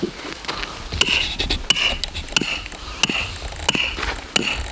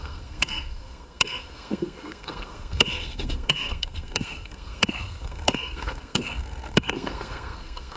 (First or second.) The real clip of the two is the first